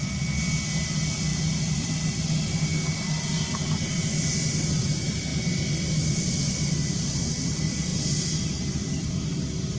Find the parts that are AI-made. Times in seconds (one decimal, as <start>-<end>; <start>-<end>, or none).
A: none

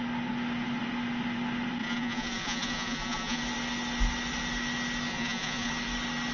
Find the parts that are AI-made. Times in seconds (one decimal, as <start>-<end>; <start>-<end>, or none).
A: 1.8-3.4; 5.1-5.7